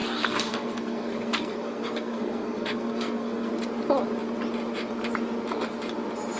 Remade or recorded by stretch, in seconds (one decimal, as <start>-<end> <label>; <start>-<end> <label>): 0.0-3.5 remade; 3.5-6.4 recorded

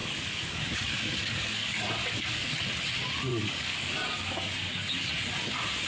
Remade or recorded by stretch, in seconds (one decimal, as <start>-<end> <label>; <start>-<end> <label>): 0.0-2.5 remade; 2.5-3.3 recorded; 3.3-5.1 remade; 5.1-5.9 recorded

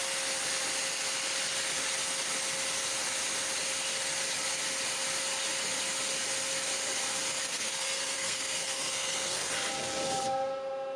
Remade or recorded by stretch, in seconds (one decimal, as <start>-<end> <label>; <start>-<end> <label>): 0.0-7.4 recorded; 7.4-9.5 remade; 9.5-11.0 recorded